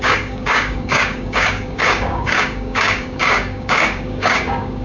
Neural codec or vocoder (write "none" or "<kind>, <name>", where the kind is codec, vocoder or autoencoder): codec, DAC